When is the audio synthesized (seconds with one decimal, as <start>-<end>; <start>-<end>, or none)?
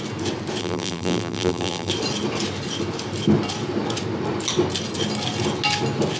0.6-1.9